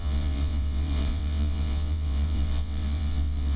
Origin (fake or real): fake